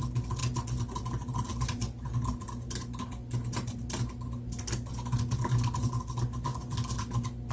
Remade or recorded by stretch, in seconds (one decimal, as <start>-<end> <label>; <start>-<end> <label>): 0.0-7.5 recorded